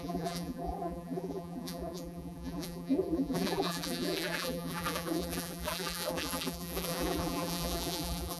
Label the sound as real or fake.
fake